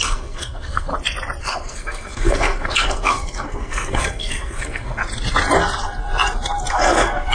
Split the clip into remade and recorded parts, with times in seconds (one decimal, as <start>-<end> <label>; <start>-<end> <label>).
0.0-0.9 remade; 0.9-1.4 recorded; 1.4-5.0 remade; 5.0-6.7 recorded; 6.7-7.3 remade